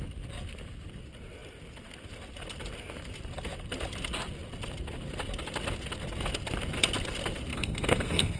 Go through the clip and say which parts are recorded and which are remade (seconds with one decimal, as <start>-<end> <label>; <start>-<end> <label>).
0.0-7.5 recorded; 7.5-8.4 remade